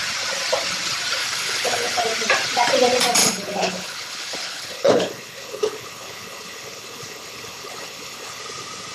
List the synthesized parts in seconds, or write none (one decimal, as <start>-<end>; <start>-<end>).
1.2-2.0; 3.2-8.4

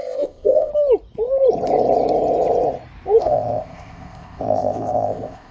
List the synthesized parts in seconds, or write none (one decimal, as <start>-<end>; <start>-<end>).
0.0-0.7; 3.2-5.5